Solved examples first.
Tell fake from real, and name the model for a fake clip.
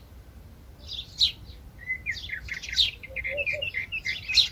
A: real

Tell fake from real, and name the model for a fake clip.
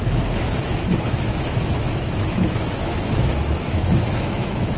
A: fake, autoencoder, DAC-VAE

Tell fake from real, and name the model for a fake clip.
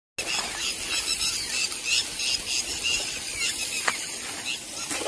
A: real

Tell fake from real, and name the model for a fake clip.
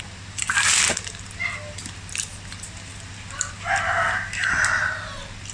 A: real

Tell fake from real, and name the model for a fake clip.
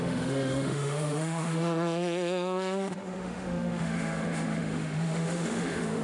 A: fake, autoencoder, DAC-VAE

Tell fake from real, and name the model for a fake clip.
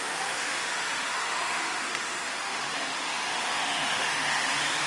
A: fake, autoencoder, DAC-VAE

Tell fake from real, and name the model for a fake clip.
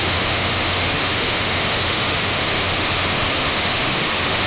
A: fake, autoencoder, DAC-VAE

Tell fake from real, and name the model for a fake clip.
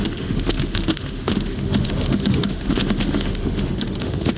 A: fake, autoencoder, DAC-VAE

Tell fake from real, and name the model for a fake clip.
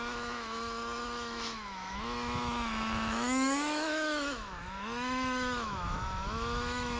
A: fake, autoencoder, DAC-VAE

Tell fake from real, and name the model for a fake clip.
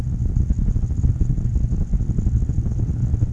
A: real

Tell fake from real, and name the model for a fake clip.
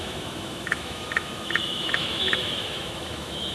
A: fake, autoencoder, DAC-VAE